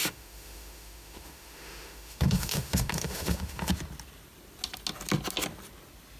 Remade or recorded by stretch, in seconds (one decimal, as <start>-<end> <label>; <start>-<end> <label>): 0.0-3.7 remade; 3.7-6.2 recorded